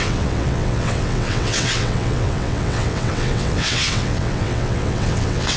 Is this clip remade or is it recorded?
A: remade